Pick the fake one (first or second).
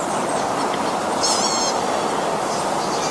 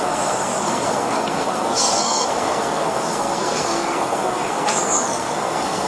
second